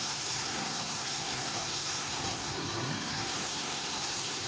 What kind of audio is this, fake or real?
fake